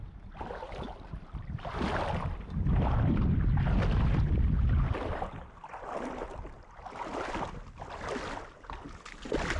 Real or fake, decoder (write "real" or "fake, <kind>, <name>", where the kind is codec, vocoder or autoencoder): real